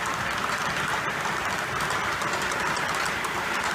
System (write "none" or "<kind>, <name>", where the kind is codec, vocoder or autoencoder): none